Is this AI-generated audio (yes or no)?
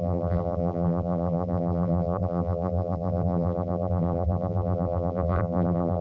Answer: yes